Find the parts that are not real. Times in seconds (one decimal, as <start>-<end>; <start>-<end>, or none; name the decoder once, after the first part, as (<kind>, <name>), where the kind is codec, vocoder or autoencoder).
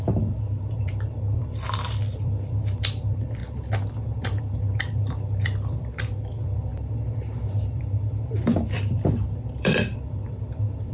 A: 0.0-3.4 (vocoder, BigVGAN v2); 4.4-6.7; 7.6-10.9